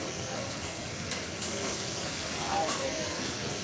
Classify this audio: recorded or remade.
remade